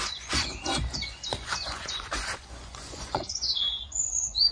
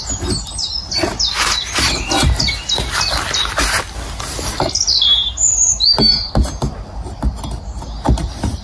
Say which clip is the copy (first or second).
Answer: first